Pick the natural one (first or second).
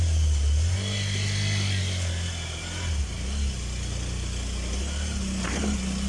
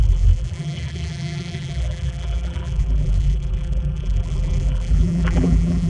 first